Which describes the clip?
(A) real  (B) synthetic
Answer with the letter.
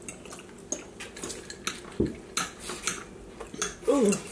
A